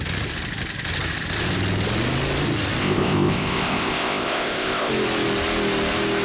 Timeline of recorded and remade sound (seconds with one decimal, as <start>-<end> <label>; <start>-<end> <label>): 0.0-2.8 recorded; 2.8-4.9 remade; 4.9-6.2 recorded